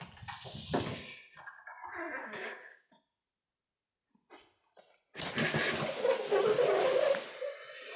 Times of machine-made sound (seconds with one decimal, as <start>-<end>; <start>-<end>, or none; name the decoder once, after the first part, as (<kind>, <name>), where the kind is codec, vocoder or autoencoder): 2.2-2.9 (codec, DAC)